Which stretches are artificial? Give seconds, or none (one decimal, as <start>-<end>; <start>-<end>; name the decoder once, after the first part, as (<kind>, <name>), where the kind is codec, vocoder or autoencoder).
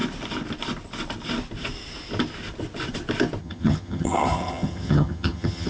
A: 3.4-5.7 (vocoder, HiFi-GAN)